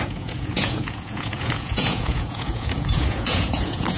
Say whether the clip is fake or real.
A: fake